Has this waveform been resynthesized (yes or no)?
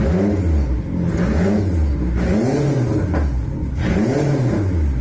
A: no